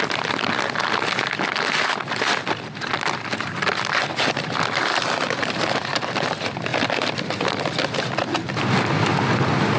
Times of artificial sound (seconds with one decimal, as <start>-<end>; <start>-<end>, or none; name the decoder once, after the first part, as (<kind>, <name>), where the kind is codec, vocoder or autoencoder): none